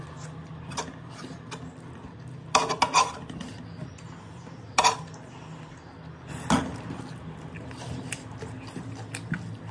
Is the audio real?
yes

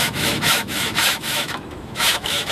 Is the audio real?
no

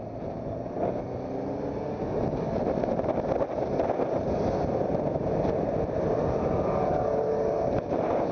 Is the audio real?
yes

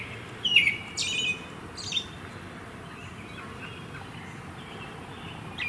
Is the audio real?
yes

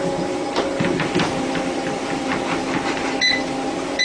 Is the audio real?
yes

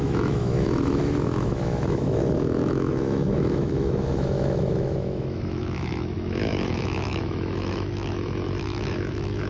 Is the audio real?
no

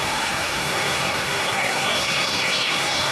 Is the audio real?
no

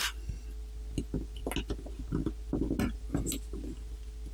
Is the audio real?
yes